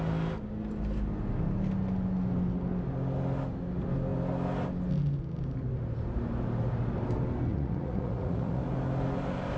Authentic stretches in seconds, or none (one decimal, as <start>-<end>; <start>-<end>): 0.0-7.5; 8.6-9.6